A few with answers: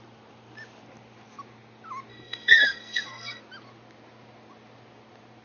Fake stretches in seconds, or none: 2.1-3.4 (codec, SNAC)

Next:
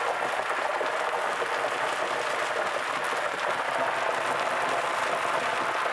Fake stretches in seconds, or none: none

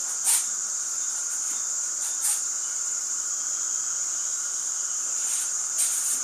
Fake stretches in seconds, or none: 0.0-3.3 (vocoder, BigVGAN v2); 4.3-6.2

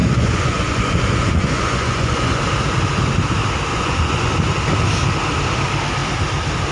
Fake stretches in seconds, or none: 0.0-2.4 (vocoder, Vocos); 3.7-4.3

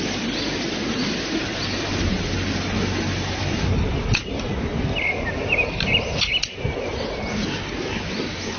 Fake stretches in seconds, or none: none